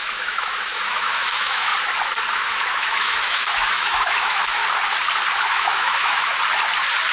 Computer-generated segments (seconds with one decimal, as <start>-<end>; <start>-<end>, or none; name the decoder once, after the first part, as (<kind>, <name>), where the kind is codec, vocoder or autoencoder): 0.0-1.7 (autoencoder, DAC-VAE); 2.3-4.6; 5.5-6.3